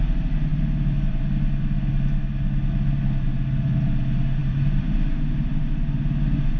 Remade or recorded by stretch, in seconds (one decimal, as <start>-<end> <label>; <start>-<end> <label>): 0.0-4.4 recorded; 4.4-5.6 remade; 5.6-6.6 recorded